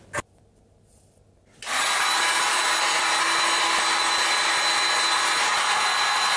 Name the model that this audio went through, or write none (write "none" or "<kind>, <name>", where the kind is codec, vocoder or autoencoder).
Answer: none